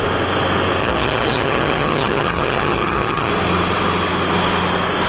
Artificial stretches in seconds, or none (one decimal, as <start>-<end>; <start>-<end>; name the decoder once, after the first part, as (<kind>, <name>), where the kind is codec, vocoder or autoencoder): 0.8-3.3 (vocoder, HiFi-GAN)